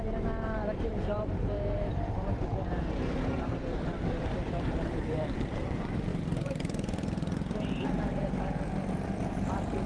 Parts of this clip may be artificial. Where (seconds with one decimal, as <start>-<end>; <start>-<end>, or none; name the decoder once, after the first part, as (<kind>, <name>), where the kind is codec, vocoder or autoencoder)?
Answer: 0.0-9.9 (vocoder, BigVGAN v2)